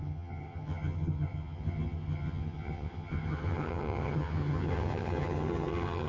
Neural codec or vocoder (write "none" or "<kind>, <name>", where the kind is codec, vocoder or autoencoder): vocoder, HiFi-GAN